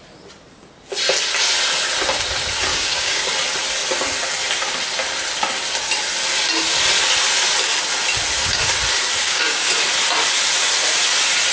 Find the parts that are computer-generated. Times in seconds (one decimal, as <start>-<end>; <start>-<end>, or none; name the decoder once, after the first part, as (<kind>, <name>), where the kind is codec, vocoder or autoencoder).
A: 2.7-3.3 (codec, DAC); 9.2-9.7